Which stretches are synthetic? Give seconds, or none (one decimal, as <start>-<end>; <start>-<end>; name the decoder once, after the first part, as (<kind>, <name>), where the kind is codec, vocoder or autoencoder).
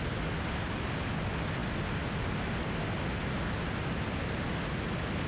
none